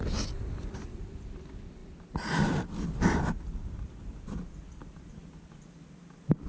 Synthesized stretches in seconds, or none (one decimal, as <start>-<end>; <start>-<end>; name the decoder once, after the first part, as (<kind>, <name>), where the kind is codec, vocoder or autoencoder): none